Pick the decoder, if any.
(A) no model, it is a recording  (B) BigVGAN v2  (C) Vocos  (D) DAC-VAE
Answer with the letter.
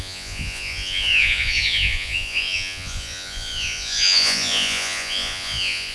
C